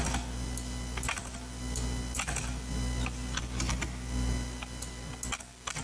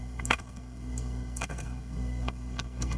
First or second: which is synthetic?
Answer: second